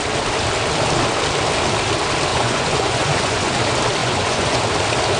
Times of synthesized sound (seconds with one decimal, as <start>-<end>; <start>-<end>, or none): 2.3-3.5; 4.0-4.6